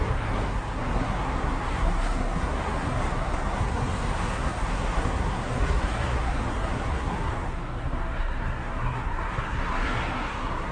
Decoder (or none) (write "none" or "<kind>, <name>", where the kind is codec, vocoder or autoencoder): codec, SNAC